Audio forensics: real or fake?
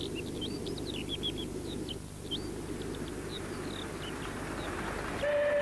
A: real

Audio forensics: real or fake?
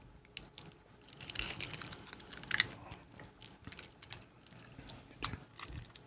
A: real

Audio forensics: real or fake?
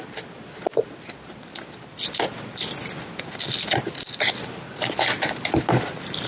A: real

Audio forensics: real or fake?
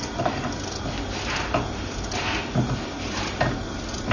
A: real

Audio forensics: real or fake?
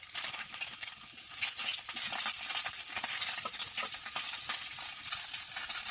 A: real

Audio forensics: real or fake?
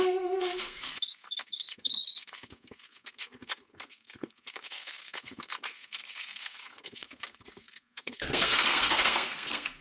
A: fake